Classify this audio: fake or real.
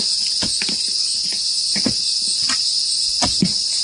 real